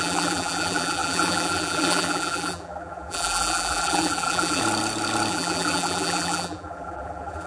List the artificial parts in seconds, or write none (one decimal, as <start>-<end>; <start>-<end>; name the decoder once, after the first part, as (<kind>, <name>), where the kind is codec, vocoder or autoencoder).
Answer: 0.0-4.6 (vocoder, BigVGAN v2); 5.3-7.5